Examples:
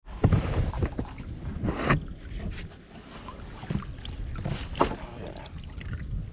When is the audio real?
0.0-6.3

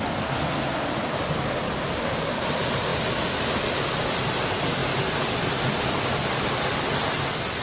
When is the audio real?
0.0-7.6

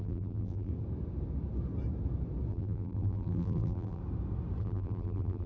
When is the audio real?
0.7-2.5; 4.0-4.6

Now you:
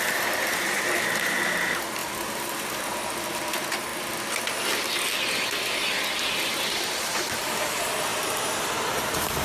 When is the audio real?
3.9-6.3